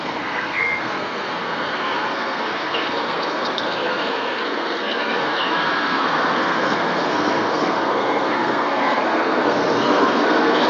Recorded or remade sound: remade